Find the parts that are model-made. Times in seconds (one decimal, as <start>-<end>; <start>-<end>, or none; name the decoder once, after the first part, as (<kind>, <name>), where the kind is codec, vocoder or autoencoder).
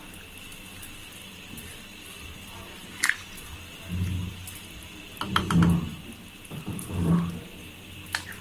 none